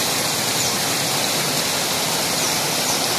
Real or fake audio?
real